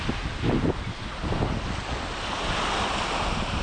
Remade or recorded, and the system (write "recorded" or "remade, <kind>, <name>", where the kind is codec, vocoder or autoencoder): recorded